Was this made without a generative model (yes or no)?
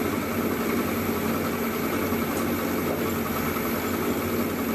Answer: yes